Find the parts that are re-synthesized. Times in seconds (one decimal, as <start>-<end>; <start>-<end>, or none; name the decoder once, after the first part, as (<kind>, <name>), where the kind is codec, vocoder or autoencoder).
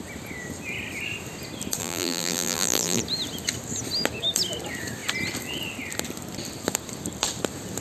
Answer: 1.8-3.0 (vocoder, BigVGAN v2)